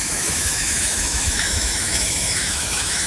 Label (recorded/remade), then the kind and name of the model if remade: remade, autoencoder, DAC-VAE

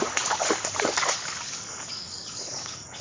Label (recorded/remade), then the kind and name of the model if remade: remade, codec, DAC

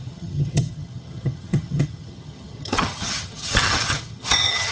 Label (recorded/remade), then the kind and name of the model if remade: remade, vocoder, HiFi-GAN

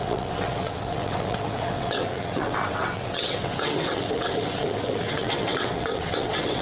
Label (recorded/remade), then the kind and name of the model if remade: remade, vocoder, WaveNeXt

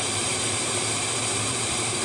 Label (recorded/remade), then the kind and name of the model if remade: remade, vocoder, BigVGAN v2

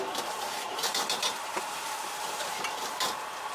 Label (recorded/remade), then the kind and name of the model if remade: remade, vocoder, BigVGAN v2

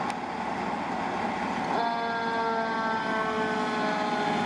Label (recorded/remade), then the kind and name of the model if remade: recorded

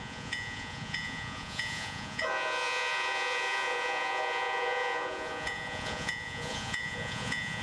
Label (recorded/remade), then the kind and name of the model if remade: remade, vocoder, Vocos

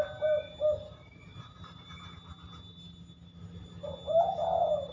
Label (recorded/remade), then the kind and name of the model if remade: recorded